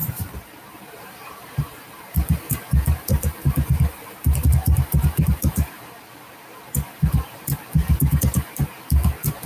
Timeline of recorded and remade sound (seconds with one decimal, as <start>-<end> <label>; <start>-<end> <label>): 0.0-9.5 remade